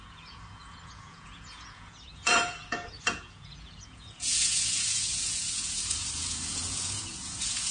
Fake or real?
fake